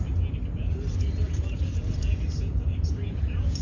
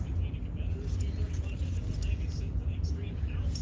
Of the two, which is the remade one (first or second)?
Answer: first